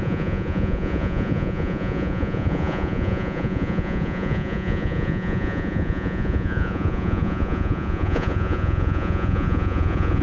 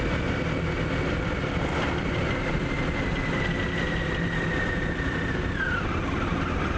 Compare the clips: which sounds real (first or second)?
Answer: second